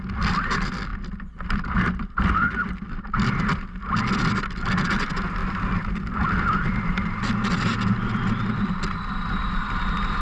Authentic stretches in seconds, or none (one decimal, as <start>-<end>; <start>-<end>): 0.0-10.2